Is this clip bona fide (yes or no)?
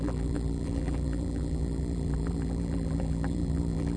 no